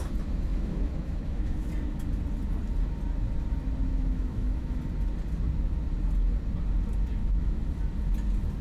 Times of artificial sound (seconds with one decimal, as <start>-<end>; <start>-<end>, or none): 0.5-1.7; 3.9-4.8; 7.2-7.7